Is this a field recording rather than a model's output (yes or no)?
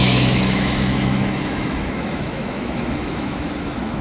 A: no